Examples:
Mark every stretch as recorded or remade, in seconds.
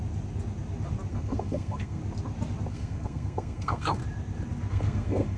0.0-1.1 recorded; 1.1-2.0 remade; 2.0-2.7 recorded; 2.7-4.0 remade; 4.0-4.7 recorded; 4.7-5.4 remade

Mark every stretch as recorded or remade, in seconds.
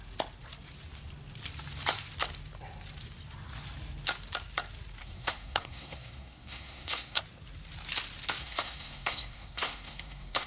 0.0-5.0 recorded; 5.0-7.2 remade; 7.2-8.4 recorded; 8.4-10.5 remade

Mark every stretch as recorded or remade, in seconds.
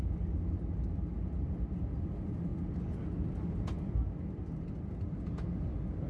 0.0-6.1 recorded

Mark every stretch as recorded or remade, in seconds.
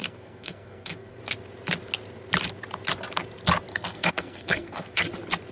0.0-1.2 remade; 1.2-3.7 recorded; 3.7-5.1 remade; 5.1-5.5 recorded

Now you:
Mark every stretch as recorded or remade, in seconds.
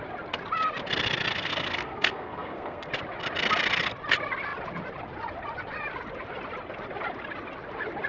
0.0-1.3 recorded; 1.3-2.9 remade; 2.9-8.1 recorded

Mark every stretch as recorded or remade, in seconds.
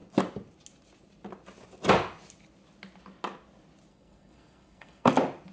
0.0-3.9 recorded; 3.9-5.1 remade; 5.1-5.5 recorded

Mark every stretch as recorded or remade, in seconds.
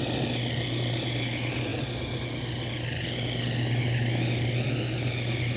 0.0-5.6 recorded